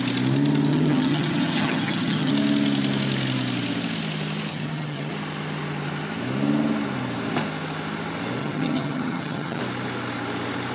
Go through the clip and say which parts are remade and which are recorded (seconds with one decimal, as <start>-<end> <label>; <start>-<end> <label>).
0.0-0.7 recorded; 0.7-2.3 remade; 2.3-4.5 recorded; 4.5-5.1 remade; 5.1-8.4 recorded; 8.4-9.6 remade; 9.6-10.7 recorded